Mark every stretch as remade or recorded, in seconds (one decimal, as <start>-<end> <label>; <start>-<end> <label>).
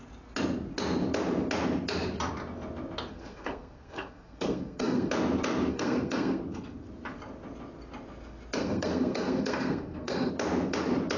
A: 0.0-3.1 recorded; 3.1-5.1 remade; 5.1-5.7 recorded; 5.7-6.4 remade; 6.4-8.6 recorded; 8.6-10.3 remade; 10.3-11.2 recorded